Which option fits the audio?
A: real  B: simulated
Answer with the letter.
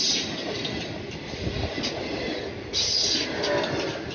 A